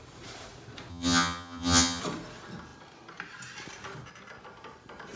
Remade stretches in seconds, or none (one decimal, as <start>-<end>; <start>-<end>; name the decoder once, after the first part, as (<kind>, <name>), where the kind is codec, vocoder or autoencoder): 0.9-2.0 (vocoder, HiFi-GAN)